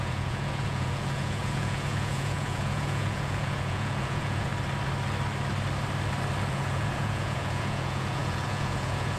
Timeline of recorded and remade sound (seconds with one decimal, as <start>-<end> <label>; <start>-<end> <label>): 0.0-4.5 remade; 4.5-6.5 recorded; 6.5-9.2 remade

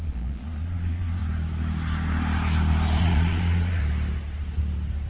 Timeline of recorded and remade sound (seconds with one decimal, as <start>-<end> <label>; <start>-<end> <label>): 0.0-1.2 remade; 1.2-3.0 recorded; 3.0-3.8 remade; 3.8-5.1 recorded